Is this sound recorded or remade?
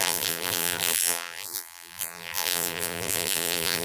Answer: remade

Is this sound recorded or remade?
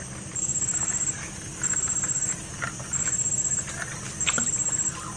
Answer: recorded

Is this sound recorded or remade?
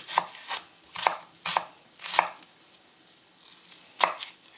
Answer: recorded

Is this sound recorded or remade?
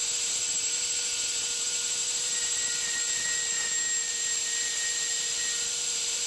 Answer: remade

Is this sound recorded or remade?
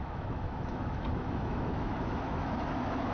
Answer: remade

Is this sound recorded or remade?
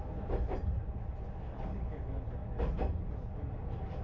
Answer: recorded